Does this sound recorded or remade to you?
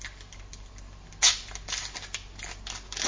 recorded